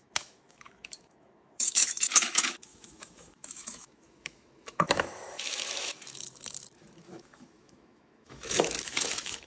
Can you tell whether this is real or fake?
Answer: fake